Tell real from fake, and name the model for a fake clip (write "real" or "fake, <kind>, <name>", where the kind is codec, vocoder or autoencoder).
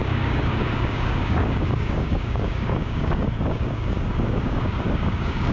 fake, codec, DAC